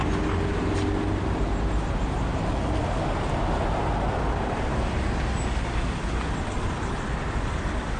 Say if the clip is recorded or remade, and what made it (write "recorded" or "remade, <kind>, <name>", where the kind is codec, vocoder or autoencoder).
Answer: recorded